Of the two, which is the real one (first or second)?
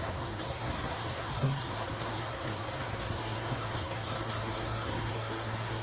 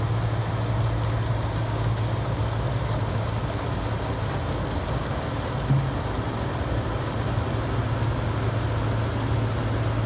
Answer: second